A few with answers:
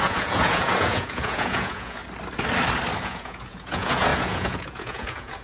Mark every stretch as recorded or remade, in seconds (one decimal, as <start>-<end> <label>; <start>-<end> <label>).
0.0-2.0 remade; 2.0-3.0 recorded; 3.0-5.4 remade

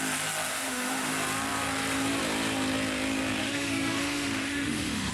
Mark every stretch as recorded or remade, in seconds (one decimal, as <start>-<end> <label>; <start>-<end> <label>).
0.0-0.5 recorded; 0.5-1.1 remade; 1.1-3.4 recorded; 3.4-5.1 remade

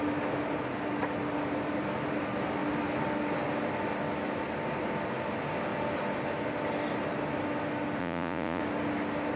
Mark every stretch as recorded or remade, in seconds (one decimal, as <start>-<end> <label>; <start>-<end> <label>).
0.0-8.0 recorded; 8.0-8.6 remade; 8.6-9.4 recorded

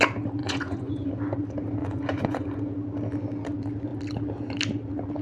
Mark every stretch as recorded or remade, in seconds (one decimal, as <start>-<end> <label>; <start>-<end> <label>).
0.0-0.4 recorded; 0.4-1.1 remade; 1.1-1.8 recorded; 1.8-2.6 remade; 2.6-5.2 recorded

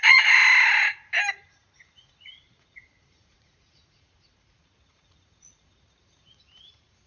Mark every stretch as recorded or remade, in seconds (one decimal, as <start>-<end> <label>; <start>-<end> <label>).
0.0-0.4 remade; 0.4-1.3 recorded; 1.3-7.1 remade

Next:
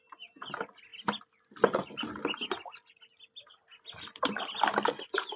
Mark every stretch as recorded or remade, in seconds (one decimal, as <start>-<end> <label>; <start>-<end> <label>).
0.0-5.4 recorded

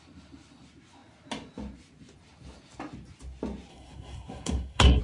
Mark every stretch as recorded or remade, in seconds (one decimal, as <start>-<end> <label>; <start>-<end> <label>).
0.0-3.7 recorded; 3.7-5.0 remade

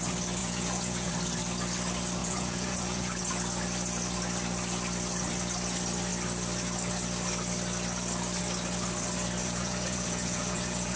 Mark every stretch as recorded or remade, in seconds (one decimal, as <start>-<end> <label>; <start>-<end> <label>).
0.0-0.4 recorded; 0.4-1.1 remade; 1.1-2.2 recorded; 2.2-3.2 remade; 3.2-9.4 recorded; 9.4-11.0 remade